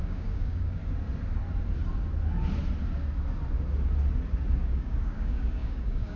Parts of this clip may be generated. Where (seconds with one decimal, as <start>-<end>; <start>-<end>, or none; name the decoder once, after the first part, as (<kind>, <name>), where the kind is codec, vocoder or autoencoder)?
0.0-0.8 (codec, DAC); 4.5-6.2